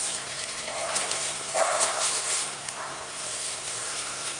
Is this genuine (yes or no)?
no